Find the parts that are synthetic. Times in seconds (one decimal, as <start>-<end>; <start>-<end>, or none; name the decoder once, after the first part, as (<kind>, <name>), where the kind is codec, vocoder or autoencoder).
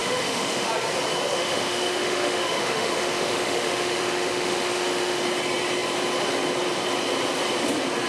0.0-0.7 (autoencoder, DAC-VAE); 1.3-5.2